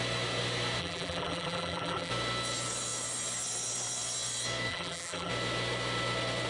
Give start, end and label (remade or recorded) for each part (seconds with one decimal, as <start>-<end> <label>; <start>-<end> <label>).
0.0-0.8 recorded; 0.8-2.1 remade; 2.1-4.7 recorded; 4.7-5.3 remade; 5.3-6.5 recorded